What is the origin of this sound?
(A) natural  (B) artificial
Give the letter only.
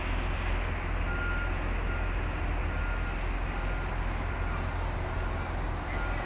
A